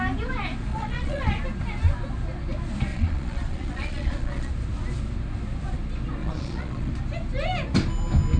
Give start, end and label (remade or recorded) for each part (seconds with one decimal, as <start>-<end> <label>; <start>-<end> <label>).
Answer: 0.0-0.7 recorded; 0.7-1.2 remade; 1.2-2.9 recorded; 2.9-4.5 remade; 4.5-6.2 recorded; 6.2-6.9 remade; 6.9-8.4 recorded